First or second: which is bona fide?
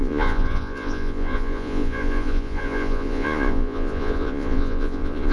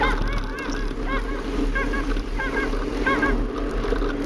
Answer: second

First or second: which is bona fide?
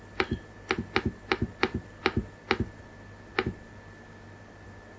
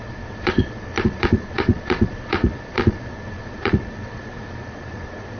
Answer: first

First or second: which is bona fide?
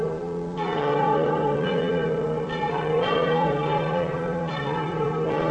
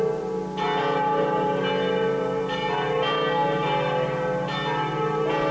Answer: second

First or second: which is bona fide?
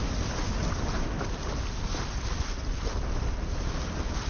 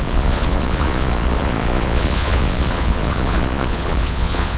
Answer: first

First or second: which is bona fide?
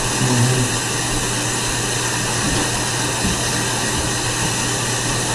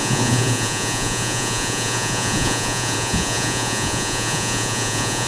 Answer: first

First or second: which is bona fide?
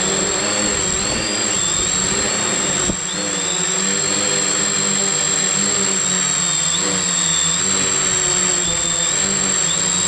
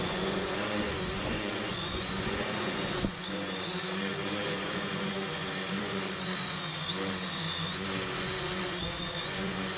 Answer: first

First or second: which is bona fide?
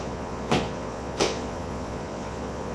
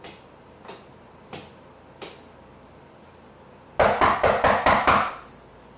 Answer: second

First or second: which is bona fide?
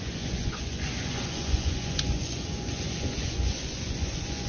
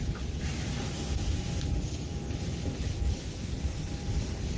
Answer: second